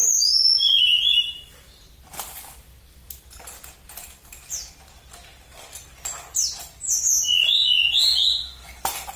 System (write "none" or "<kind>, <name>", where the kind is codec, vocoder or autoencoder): none